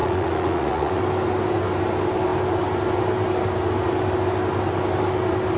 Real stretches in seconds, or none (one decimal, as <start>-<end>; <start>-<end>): 1.0-5.6